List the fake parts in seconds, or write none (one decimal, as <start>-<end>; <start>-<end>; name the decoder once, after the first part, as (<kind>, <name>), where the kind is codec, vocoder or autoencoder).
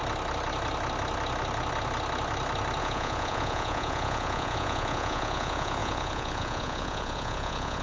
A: 2.8-7.8 (vocoder, Vocos)